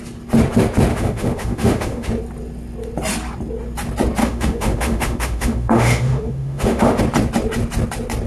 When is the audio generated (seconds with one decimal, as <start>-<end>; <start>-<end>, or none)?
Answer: 0.9-2.1; 4.2-7.0